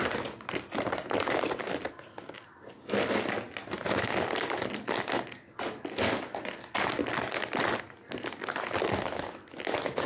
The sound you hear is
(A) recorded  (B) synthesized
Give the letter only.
A